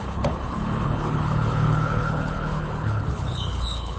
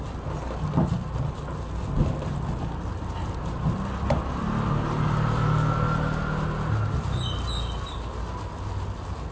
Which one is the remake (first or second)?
first